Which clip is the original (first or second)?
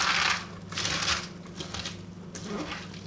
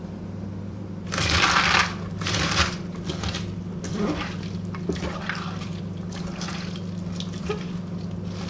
first